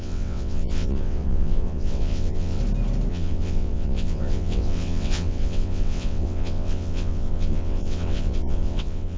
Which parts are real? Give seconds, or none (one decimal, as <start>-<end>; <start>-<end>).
2.6-3.1